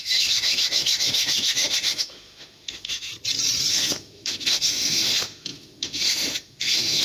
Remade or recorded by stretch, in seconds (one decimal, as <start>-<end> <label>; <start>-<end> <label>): 0.0-3.1 remade; 3.1-3.7 recorded; 3.7-7.0 remade